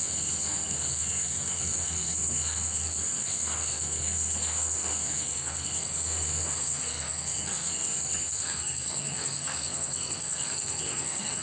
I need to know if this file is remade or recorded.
remade